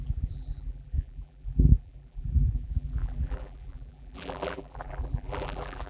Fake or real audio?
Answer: fake